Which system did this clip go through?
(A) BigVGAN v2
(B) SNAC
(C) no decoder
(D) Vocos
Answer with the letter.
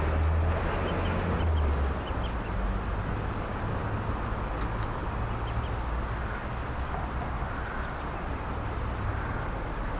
C